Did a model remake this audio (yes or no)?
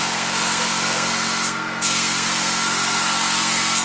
yes